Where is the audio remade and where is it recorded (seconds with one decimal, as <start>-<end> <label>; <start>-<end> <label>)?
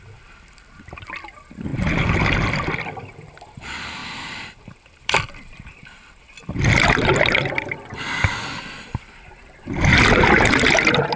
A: 0.0-1.7 remade; 1.7-3.3 recorded; 3.3-11.2 remade